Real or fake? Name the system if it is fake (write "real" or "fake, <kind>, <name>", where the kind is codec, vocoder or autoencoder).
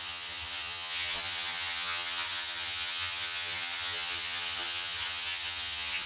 fake, vocoder, HiFi-GAN